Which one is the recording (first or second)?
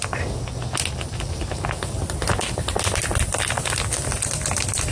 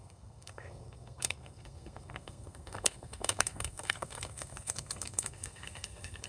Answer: first